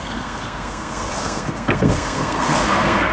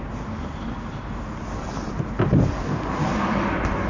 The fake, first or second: first